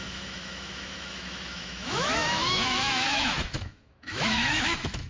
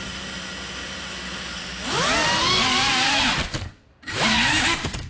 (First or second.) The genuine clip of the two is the second